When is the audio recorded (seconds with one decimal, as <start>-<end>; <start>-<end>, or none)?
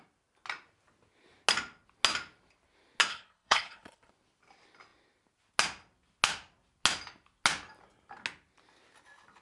0.0-3.1; 4.1-9.4